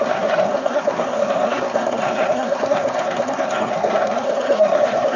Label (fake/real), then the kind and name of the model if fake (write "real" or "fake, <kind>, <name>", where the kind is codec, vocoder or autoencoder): fake, codec, SNAC